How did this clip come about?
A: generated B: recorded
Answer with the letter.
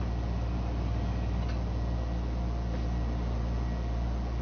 B